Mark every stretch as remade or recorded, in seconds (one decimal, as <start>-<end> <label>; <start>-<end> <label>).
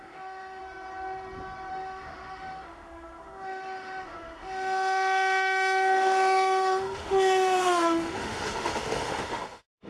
0.0-0.6 remade; 0.6-1.7 recorded; 1.7-9.9 remade